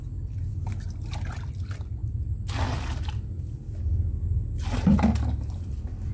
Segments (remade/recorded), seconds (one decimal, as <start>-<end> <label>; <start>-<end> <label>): 0.0-6.1 recorded